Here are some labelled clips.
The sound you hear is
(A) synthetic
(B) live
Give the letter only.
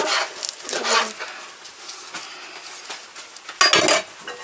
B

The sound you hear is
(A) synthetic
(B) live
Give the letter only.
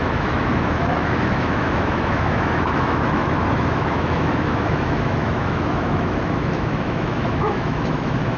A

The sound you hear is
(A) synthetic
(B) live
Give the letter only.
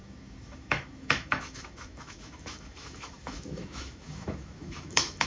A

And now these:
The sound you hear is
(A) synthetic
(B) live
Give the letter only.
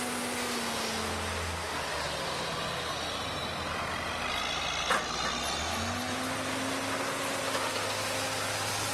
B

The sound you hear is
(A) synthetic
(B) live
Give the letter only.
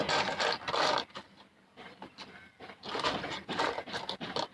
B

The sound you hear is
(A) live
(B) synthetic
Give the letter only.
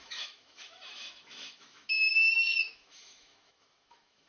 B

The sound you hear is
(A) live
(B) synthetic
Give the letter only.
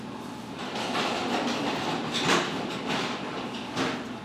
A